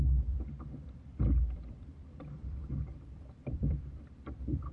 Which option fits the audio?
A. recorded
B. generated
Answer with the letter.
B